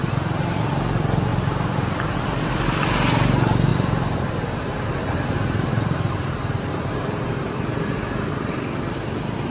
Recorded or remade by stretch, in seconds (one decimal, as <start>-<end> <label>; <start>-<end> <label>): 0.0-0.6 remade; 0.6-1.3 recorded; 1.3-2.8 remade; 2.8-3.7 recorded; 3.7-8.5 remade; 8.5-9.5 recorded